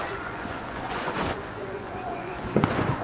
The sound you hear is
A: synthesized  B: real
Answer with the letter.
A